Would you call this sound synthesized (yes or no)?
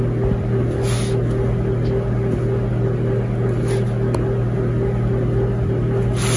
no